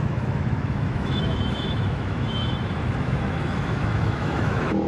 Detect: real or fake fake